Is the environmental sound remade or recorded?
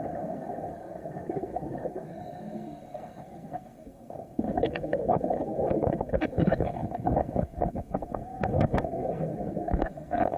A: remade